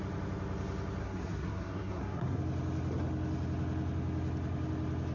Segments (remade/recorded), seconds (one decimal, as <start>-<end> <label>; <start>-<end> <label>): 0.0-1.0 recorded; 1.0-2.4 remade; 2.4-5.1 recorded